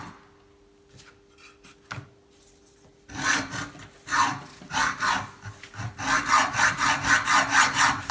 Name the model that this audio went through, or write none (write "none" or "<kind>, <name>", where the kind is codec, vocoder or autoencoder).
none